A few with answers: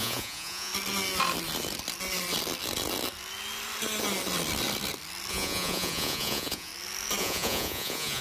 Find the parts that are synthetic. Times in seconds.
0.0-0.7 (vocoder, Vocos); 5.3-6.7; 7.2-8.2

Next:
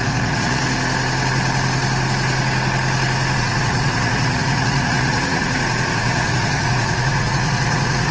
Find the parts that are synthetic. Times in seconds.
0.0-0.6 (vocoder, Vocos); 3.4-8.1

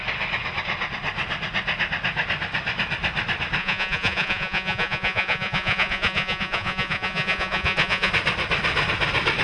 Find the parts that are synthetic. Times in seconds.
3.6-8.1 (vocoder, Vocos)

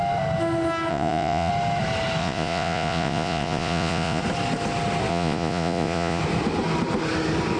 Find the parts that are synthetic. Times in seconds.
0.9-1.5 (vocoder, Vocos); 2.2-4.2; 5.1-6.2

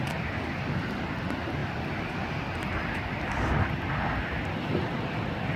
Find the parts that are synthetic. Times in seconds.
none